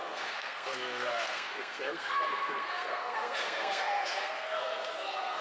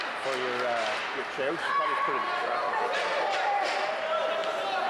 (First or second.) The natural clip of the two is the second